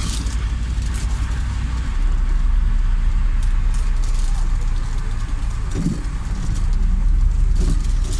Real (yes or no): yes